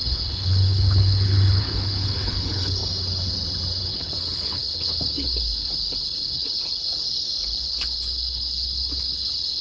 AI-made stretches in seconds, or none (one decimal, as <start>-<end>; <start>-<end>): 0.0-2.8; 3.8-9.6

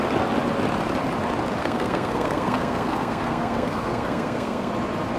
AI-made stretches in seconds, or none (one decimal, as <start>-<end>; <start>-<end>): 1.6-4.7

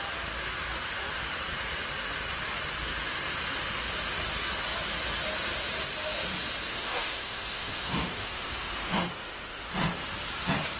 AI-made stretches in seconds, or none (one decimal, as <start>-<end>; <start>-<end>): 6.7-9.7

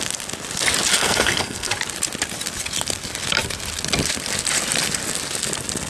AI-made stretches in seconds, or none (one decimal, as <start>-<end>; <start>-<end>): 0.9-1.7

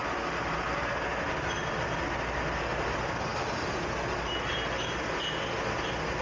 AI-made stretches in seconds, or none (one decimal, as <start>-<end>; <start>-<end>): none

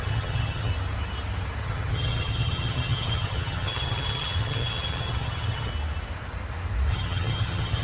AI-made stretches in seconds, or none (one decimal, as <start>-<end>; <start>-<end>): 0.0-0.7; 1.6-5.7; 6.9-7.8

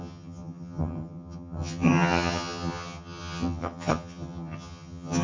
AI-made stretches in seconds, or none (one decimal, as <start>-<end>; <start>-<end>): 0.0-5.2

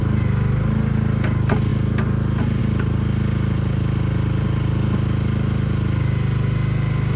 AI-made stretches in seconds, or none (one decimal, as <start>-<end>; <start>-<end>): none